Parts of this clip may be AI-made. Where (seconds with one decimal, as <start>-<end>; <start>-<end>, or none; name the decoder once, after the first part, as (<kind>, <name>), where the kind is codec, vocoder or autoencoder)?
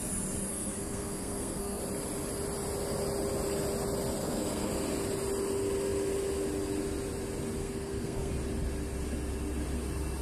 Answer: 0.5-1.8 (codec, SNAC); 4.2-4.7; 7.6-8.3